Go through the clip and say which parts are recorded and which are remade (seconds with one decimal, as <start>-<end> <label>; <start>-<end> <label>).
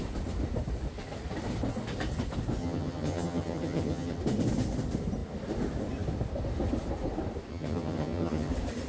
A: 0.0-2.6 recorded; 2.6-4.2 remade; 4.2-7.5 recorded; 7.5-8.5 remade; 8.5-8.9 recorded